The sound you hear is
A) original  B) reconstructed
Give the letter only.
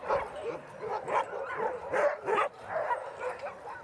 A